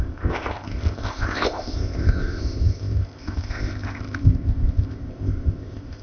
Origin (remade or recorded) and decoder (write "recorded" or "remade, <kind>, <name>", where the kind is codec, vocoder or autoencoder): remade, codec, ZipCodec